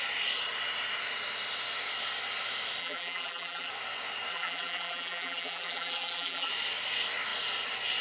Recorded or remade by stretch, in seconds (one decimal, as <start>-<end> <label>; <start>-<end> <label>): 0.0-2.8 recorded; 2.8-3.7 remade; 3.7-4.3 recorded; 4.3-6.5 remade; 6.5-8.0 recorded